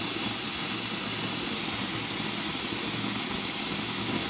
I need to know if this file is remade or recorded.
recorded